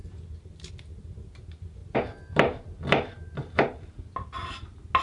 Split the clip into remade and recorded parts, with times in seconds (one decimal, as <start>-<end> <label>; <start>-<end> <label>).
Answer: 0.0-5.0 recorded

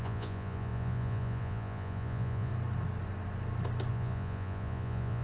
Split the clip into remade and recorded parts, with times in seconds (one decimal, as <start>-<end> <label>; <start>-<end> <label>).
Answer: 0.0-2.5 remade; 2.5-3.9 recorded; 3.9-5.2 remade